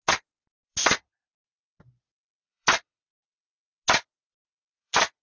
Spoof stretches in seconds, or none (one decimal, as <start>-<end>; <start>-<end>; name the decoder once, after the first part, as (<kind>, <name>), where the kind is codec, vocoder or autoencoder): 0.7-1.7 (vocoder, BigVGAN v2); 2.3-3.6; 4.4-5.2